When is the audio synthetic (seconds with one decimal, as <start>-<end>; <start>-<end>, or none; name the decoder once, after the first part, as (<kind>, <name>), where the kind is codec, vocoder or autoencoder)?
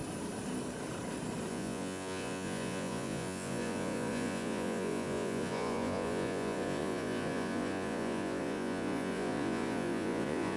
1.5-10.6 (vocoder, Vocos)